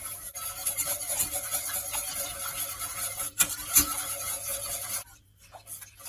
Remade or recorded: remade